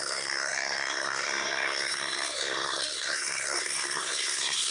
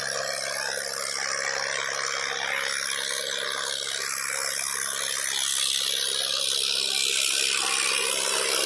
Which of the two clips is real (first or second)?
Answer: second